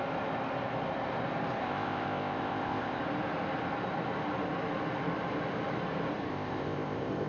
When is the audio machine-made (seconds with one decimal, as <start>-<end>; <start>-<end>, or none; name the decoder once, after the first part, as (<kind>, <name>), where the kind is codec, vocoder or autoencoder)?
1.6-3.0 (codec, ZipCodec); 6.3-7.3